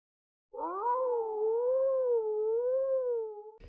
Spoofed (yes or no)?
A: no